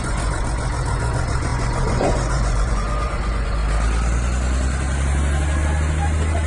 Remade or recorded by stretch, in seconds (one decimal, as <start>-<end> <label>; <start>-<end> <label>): 0.0-3.6 remade; 3.6-6.5 recorded